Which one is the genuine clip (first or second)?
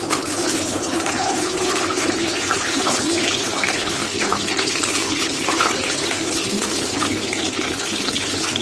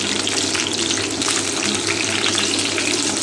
second